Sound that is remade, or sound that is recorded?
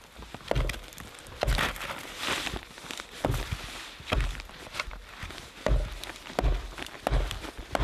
recorded